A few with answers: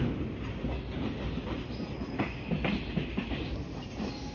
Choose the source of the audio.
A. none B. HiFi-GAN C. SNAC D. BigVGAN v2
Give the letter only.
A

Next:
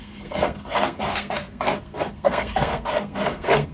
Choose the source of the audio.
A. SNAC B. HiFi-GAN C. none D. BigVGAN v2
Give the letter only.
A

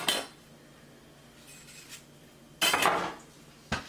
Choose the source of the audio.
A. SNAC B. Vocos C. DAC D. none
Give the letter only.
D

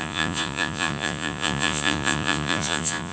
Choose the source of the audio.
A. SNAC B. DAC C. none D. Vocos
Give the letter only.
D